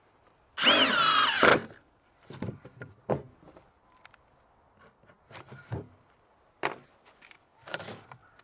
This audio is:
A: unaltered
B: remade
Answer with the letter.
A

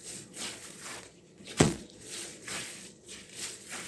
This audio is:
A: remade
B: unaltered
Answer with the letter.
A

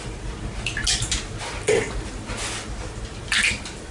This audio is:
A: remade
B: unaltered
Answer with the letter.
B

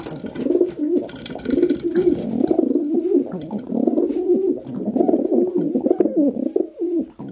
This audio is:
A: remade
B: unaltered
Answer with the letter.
B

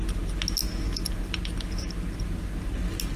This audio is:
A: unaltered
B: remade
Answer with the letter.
A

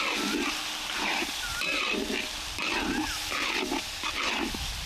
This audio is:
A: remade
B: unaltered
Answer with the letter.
B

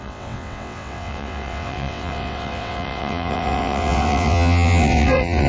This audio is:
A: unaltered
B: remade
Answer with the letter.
B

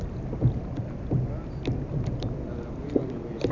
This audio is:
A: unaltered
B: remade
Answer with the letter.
A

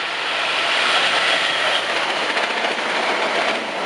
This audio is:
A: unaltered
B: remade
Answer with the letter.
A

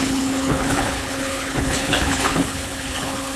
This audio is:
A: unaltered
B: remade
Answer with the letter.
B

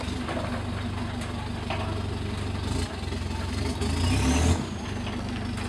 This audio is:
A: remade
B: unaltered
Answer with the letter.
B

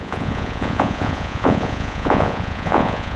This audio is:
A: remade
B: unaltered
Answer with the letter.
A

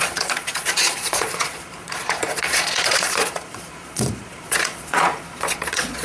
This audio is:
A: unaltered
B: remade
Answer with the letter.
B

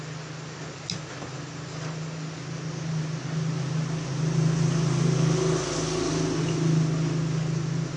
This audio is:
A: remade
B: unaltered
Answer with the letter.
B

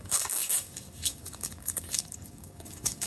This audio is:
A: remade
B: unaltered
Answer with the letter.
A